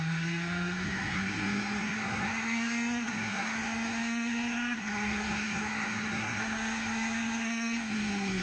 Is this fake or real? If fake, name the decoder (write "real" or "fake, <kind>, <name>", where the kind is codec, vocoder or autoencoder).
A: fake, codec, SNAC